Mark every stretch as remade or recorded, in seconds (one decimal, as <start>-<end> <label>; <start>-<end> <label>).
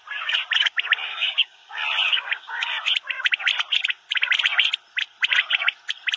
0.0-1.1 recorded; 1.1-1.7 remade; 1.7-2.1 recorded; 2.1-2.7 remade; 2.7-6.2 recorded